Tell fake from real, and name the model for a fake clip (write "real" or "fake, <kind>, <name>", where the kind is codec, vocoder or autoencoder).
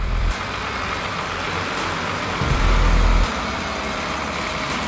fake, vocoder, BigVGAN v2